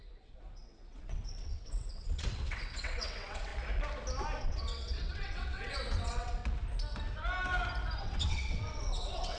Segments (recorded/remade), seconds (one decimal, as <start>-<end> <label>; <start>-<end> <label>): 0.0-3.5 remade; 3.5-4.4 recorded; 4.4-6.4 remade; 6.4-8.0 recorded; 8.0-9.4 remade